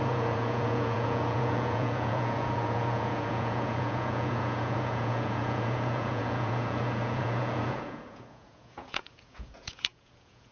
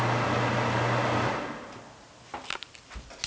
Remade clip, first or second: first